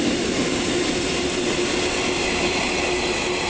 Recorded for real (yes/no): yes